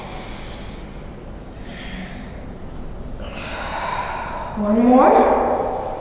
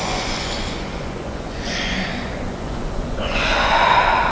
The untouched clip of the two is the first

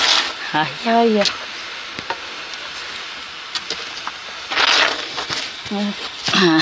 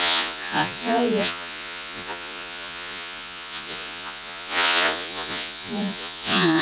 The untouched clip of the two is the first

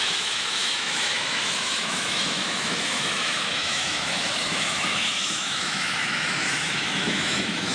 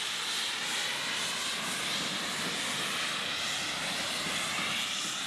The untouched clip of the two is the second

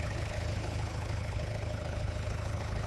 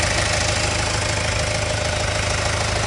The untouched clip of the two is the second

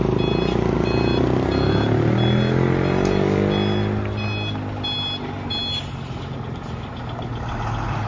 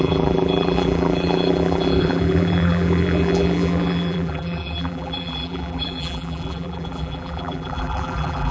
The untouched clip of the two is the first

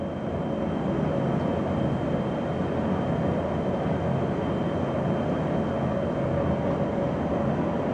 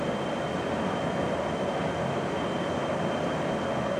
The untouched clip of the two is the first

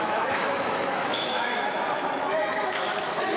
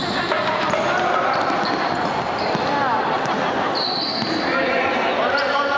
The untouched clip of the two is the second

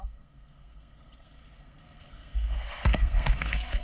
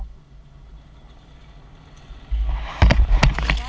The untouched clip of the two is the second